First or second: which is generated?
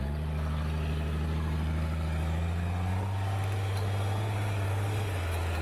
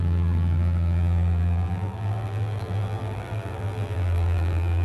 second